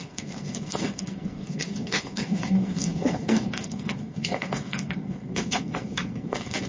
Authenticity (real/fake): fake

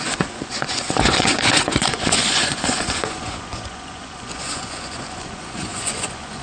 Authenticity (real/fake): fake